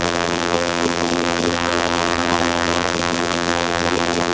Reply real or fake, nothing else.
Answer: fake